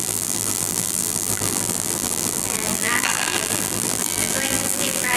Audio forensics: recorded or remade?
remade